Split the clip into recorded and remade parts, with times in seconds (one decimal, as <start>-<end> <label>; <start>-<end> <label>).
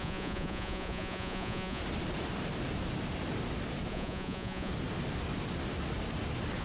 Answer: 0.0-1.8 remade; 1.8-3.9 recorded; 3.9-4.7 remade; 4.7-6.6 recorded